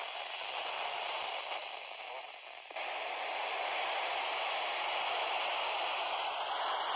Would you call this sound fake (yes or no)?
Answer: no